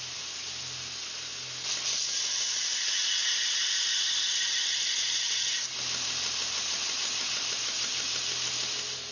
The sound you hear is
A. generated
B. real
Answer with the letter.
B